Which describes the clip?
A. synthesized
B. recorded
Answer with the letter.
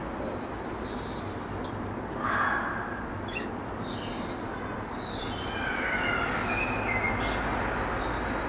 B